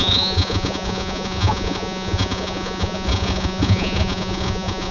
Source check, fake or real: fake